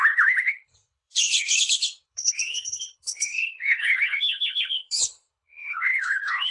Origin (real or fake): fake